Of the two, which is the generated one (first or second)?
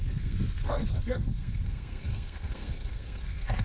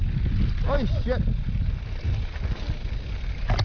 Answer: first